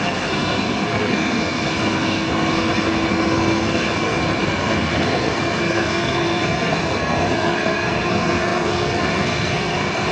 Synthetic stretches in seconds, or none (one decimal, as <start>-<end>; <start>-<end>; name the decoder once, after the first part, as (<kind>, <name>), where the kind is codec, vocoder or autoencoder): 0.0-10.1 (codec, SNAC)